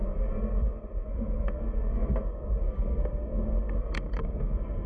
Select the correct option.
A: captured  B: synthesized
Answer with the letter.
B